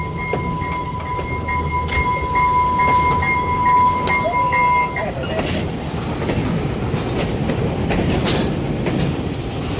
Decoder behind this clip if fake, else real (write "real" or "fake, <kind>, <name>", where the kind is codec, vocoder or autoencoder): real